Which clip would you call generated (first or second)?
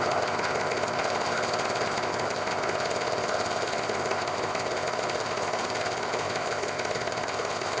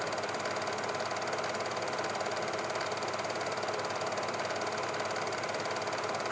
first